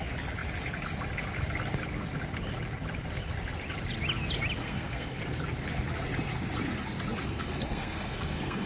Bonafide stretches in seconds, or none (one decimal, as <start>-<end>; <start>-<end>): 0.0-4.6; 5.2-7.2